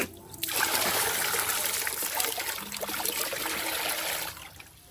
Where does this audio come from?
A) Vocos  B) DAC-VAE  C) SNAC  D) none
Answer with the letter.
D